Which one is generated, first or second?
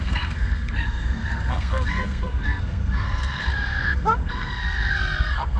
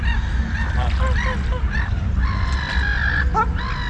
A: first